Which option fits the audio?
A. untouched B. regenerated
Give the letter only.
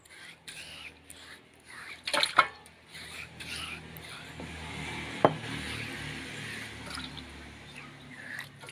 A